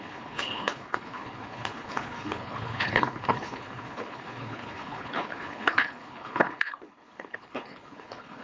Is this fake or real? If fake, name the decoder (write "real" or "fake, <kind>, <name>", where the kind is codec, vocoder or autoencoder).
fake, codec, HILCodec